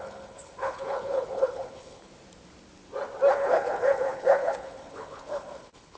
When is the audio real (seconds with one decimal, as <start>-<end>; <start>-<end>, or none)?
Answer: 2.1-3.3